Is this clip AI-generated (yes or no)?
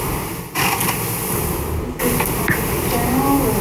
no